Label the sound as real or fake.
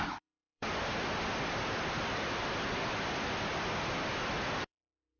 fake